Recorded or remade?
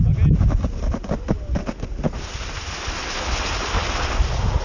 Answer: recorded